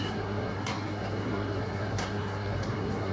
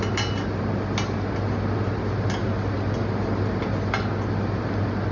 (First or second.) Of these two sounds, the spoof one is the first